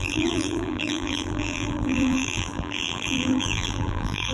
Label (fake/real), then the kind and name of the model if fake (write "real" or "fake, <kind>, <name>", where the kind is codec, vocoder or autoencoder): fake, vocoder, BigVGAN v2